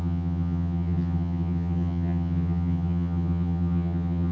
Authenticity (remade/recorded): remade